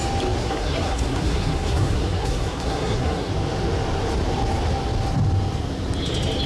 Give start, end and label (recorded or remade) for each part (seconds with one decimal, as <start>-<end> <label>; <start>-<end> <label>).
0.0-0.4 recorded; 0.4-3.3 remade; 3.3-6.5 recorded